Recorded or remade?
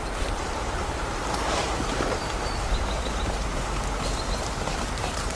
remade